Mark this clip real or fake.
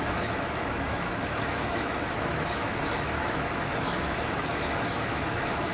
fake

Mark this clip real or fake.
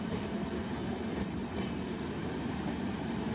real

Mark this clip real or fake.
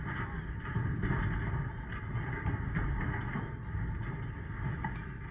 real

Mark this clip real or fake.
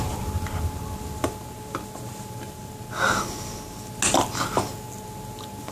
real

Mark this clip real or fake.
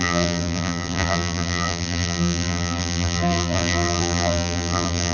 fake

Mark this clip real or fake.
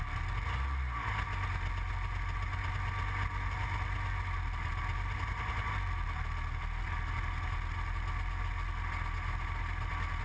real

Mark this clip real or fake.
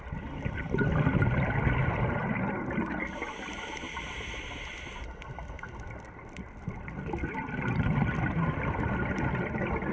real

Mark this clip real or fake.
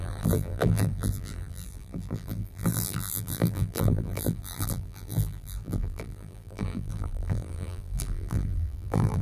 fake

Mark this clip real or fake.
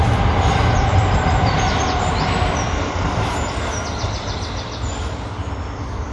real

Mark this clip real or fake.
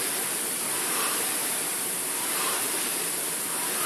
real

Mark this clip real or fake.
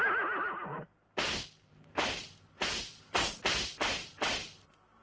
real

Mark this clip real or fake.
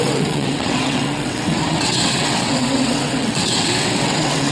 fake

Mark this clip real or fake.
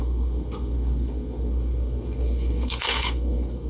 fake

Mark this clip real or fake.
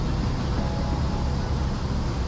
real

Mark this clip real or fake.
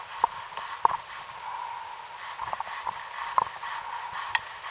real